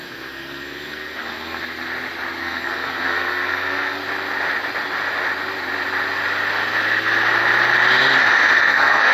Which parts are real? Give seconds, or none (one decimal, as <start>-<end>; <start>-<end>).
1.6-2.4; 4.0-8.6